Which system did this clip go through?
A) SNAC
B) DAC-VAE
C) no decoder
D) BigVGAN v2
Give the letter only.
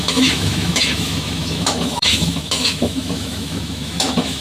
B